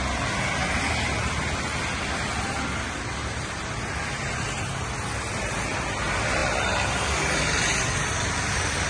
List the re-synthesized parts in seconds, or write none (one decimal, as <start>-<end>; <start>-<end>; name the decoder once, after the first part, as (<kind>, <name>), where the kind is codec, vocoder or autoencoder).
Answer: none